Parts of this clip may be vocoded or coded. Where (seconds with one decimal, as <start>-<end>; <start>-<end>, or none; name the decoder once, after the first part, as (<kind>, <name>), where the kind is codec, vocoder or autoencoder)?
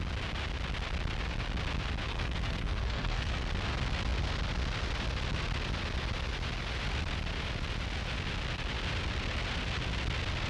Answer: 2.1-3.4 (codec, SNAC)